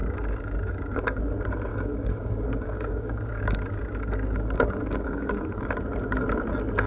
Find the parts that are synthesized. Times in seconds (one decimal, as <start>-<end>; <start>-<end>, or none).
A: 0.0-1.2; 1.7-5.7